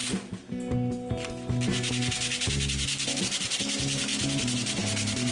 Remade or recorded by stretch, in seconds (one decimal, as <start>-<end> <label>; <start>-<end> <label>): 0.0-5.3 recorded